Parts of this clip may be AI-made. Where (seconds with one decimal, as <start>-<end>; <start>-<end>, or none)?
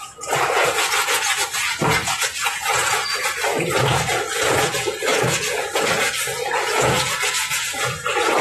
0.0-8.4